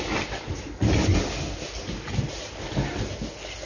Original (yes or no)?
yes